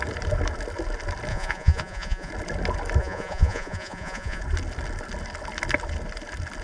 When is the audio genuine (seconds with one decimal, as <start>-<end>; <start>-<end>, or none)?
0.0-1.3; 2.3-3.0; 4.4-6.6